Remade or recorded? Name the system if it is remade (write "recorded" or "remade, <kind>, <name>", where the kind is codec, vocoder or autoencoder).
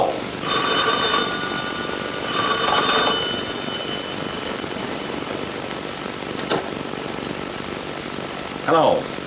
recorded